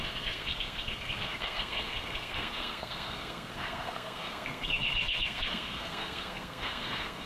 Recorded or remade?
remade